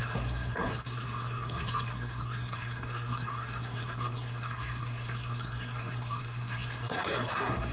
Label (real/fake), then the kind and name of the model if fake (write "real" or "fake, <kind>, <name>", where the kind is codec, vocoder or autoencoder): fake, codec, SNAC